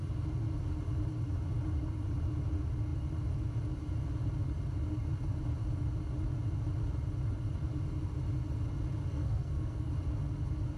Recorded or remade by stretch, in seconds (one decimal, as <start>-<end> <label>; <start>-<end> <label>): 0.0-9.1 recorded; 9.1-9.9 remade; 9.9-10.8 recorded